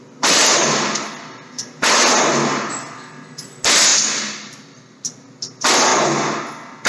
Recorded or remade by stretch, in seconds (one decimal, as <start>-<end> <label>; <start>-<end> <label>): 0.0-6.9 recorded

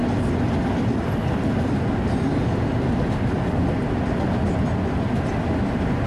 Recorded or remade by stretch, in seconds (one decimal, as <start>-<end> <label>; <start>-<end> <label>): 0.0-6.1 recorded

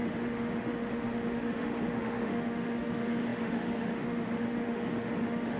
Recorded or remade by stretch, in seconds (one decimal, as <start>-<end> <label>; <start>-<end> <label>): 0.0-5.6 remade

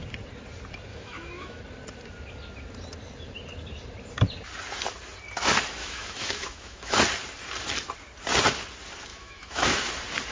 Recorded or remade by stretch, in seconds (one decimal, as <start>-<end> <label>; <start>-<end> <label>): 0.0-0.9 recorded; 0.9-1.6 remade; 1.6-5.8 recorded; 5.8-7.0 remade; 7.0-9.1 recorded; 9.1-9.9 remade; 9.9-10.3 recorded

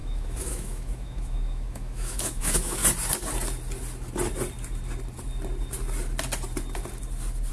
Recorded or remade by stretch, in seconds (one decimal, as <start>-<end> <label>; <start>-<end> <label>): 0.0-2.8 remade; 2.8-7.5 recorded

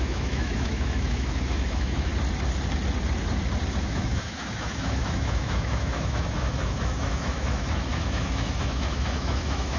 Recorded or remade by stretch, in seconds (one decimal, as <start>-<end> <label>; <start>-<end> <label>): 0.0-2.1 remade; 2.1-3.8 recorded; 3.8-9.8 remade

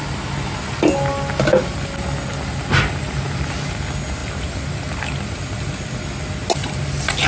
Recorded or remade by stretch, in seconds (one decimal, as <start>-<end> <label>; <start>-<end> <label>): 0.0-7.3 recorded

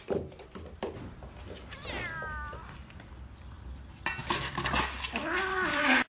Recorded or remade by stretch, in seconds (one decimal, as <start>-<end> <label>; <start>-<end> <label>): 0.0-6.1 recorded